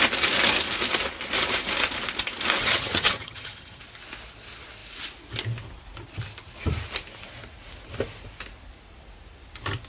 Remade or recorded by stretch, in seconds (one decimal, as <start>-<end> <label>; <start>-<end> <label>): 0.0-2.6 recorded; 2.6-3.8 remade; 3.8-9.9 recorded